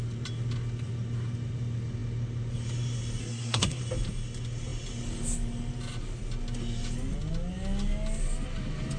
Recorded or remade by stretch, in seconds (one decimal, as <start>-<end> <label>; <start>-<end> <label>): 0.0-3.2 recorded; 3.2-3.8 remade; 3.8-9.0 recorded